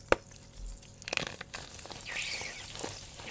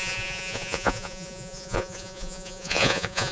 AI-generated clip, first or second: second